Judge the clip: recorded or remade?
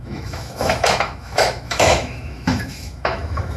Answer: remade